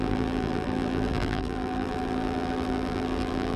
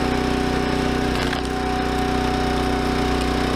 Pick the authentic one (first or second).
second